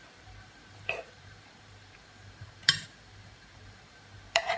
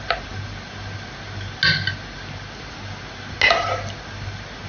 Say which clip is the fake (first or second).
first